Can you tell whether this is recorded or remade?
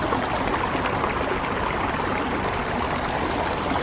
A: recorded